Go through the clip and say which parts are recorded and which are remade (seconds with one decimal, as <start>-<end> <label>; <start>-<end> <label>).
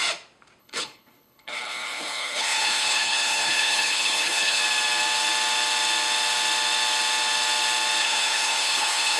0.0-0.6 recorded; 0.6-4.6 remade; 4.6-8.0 recorded; 8.0-9.2 remade